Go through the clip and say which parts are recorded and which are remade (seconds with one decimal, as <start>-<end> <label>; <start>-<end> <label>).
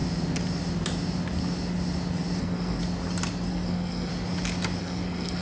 0.0-2.4 recorded; 2.4-2.8 remade; 2.8-3.5 recorded; 3.5-4.1 remade; 4.1-4.8 recorded; 4.8-5.4 remade